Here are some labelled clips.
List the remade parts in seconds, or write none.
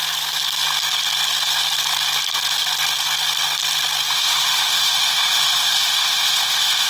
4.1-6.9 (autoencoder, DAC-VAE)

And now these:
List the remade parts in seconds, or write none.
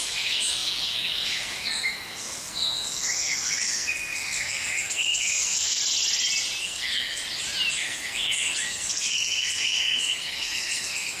0.0-5.8 (codec, SNAC); 6.6-7.2; 7.7-11.2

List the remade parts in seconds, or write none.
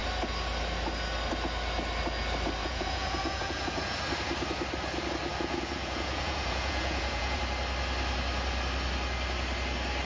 2.6-4.0 (vocoder, Vocos); 5.3-7.4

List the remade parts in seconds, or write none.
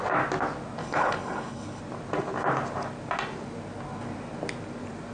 0.8-1.8 (codec, HILCodec)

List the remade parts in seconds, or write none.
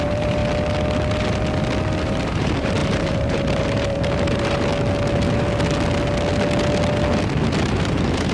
0.0-0.4 (vocoder, BigVGAN v2); 2.0-4.7; 7.7-8.3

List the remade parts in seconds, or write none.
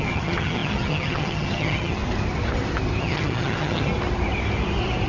0.0-2.0 (vocoder, HiFi-GAN); 3.0-3.9